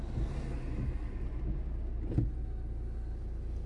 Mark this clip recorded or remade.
recorded